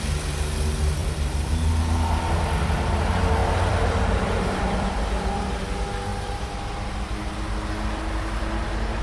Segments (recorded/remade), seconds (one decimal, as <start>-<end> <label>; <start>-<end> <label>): 0.0-1.0 recorded; 1.0-1.7 remade; 1.7-3.4 recorded; 3.4-5.1 remade; 5.1-6.1 recorded; 6.1-8.5 remade; 8.5-9.0 recorded